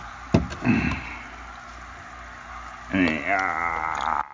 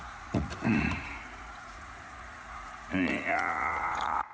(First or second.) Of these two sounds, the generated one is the second